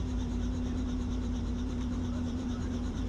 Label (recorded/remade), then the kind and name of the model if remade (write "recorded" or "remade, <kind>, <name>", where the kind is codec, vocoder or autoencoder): remade, vocoder, BigVGAN v2